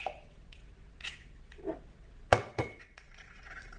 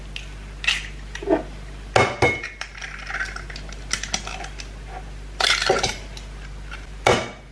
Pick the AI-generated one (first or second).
first